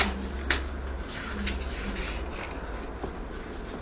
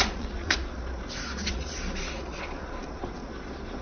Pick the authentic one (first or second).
first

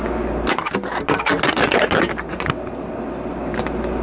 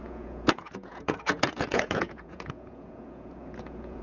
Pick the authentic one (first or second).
first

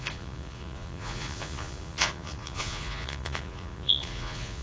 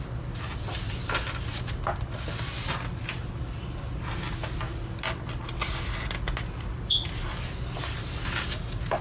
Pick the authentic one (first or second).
second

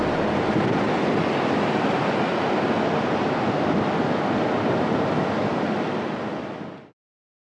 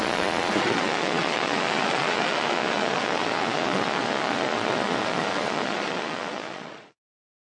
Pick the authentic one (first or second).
first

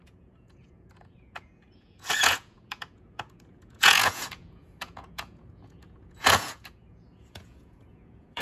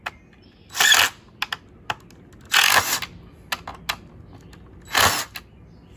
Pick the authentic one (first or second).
second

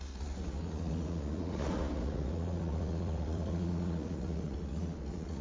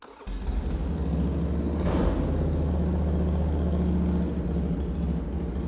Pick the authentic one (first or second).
second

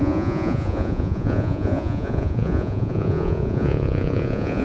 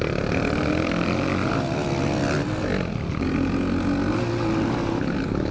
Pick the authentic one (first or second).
second